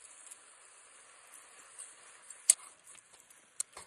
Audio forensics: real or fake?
real